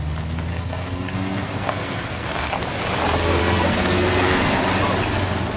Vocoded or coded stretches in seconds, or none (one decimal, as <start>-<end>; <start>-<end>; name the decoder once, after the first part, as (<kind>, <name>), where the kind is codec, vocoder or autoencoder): 0.5-2.5 (codec, SNAC); 3.4-4.6